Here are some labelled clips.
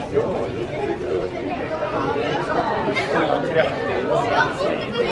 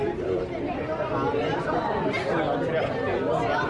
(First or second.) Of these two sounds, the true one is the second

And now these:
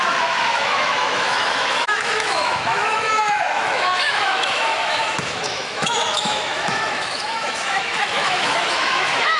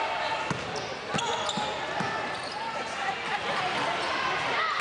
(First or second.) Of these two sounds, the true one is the second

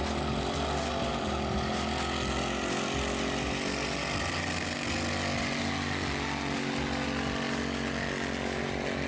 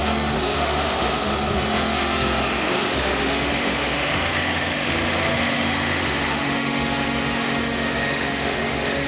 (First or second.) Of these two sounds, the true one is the first